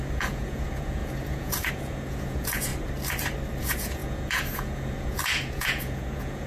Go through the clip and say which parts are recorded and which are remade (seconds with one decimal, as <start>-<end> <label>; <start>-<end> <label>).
0.0-2.7 remade; 2.7-3.6 recorded; 3.6-6.5 remade